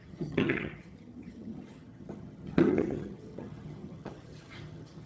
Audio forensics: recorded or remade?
remade